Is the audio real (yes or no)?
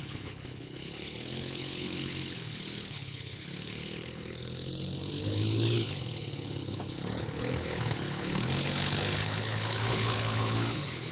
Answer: no